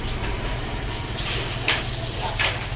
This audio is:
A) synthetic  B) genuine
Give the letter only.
A